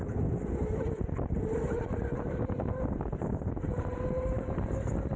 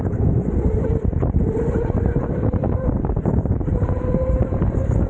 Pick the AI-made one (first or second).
second